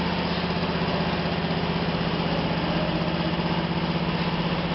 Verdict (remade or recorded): recorded